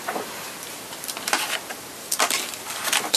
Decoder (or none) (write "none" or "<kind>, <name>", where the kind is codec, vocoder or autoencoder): none